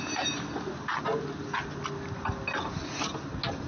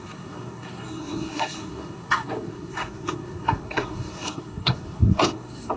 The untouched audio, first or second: first